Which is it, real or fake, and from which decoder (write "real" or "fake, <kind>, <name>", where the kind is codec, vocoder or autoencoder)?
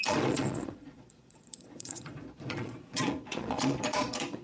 fake, vocoder, Vocos